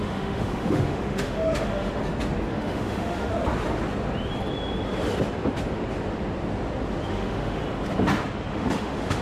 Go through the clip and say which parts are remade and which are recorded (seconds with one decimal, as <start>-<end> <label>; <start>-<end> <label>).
0.0-2.0 remade; 2.0-2.5 recorded; 2.5-3.3 remade; 3.3-7.1 recorded; 7.1-7.6 remade; 7.6-8.5 recorded; 8.5-9.2 remade